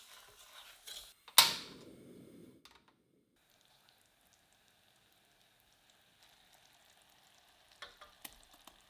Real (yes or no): yes